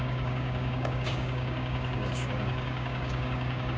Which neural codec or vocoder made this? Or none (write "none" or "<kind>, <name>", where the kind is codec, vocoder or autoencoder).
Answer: codec, DAC